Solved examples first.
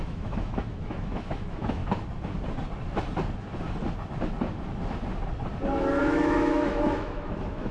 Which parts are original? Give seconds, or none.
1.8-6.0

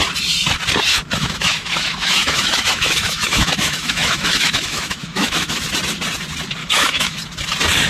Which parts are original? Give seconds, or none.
0.0-0.9; 5.6-6.6; 7.1-7.9

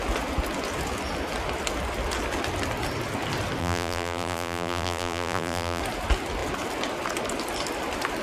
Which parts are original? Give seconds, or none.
0.0-3.6; 5.8-8.2